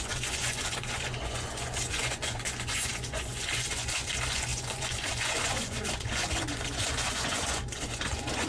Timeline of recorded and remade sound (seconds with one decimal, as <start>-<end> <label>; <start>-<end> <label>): 0.0-8.5 remade

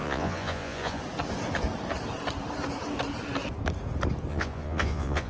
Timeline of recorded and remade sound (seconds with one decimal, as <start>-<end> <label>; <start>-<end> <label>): 0.0-1.0 remade; 1.0-4.3 recorded; 4.3-5.3 remade

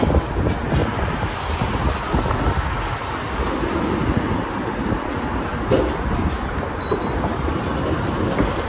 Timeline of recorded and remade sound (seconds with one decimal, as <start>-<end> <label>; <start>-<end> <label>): 0.0-0.8 remade; 0.8-3.9 recorded; 3.9-5.5 remade; 5.5-6.5 recorded; 6.5-6.9 remade; 6.9-7.5 recorded; 7.5-8.7 remade

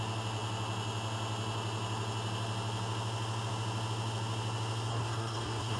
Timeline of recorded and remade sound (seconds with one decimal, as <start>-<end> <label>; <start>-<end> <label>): 0.0-4.9 recorded; 4.9-5.8 remade

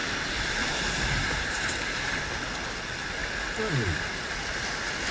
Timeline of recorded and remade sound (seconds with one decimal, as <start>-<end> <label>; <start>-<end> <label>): 0.0-2.2 remade; 2.2-5.1 recorded

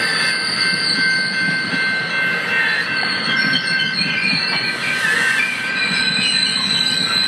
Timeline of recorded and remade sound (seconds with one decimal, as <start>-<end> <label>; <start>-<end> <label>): 0.0-3.0 recorded; 3.0-6.8 remade; 6.8-7.3 recorded

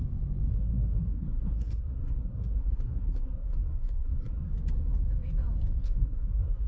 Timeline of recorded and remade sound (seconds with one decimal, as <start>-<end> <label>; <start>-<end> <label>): 0.0-0.5 recorded; 0.5-4.5 remade; 4.5-5.8 recorded; 5.8-6.7 remade

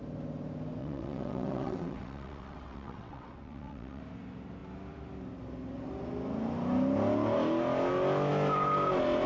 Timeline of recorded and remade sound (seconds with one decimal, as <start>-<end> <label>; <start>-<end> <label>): 0.0-0.8 recorded; 0.8-4.0 remade; 4.0-9.3 recorded